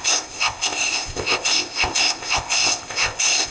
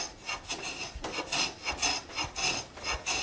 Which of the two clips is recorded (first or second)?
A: second